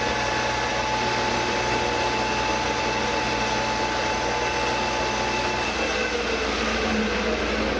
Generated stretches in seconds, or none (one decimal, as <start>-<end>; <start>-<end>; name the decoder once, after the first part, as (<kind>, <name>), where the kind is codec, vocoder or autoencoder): none